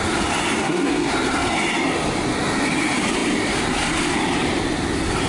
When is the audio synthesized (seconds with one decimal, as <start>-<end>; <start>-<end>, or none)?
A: 0.6-1.1